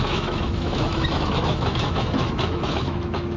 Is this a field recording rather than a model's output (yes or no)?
no